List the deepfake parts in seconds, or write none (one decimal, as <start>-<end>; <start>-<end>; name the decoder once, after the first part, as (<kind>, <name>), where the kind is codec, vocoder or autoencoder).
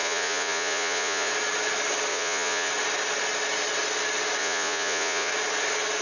0.0-1.3 (vocoder, Vocos); 2.1-2.7; 4.4-5.3